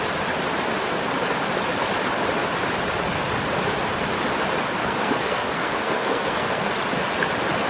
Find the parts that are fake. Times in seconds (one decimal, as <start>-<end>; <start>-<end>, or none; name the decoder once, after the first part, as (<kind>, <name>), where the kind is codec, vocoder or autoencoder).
4.8-6.7 (codec, SNAC)